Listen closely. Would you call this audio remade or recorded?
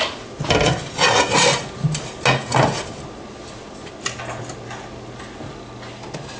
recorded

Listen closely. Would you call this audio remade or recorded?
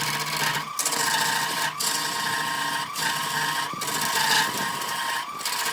recorded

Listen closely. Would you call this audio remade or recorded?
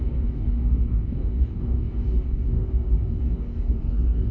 remade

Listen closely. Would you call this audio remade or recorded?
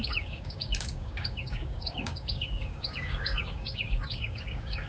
remade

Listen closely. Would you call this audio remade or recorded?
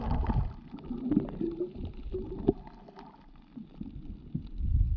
recorded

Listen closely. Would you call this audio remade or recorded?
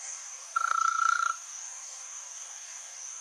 remade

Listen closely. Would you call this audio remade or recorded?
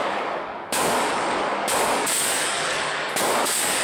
remade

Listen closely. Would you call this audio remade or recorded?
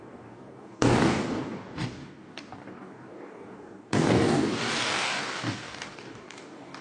remade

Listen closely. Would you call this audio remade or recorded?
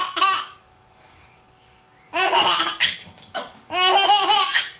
remade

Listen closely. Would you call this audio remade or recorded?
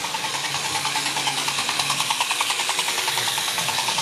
remade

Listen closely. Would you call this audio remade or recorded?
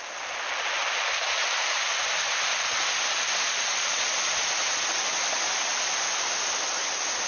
recorded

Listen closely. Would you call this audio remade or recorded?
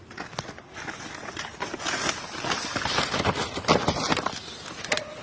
recorded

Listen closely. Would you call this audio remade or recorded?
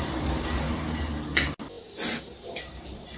recorded